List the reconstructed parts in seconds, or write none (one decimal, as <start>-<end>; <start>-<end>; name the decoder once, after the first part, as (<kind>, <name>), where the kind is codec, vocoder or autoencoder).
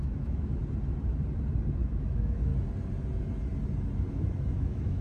0.0-0.6 (autoencoder, DAC-VAE); 1.8-2.5; 4.1-5.0